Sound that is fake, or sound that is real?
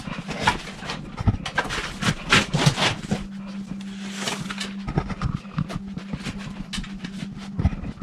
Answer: real